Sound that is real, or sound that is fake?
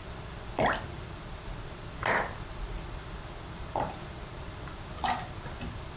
real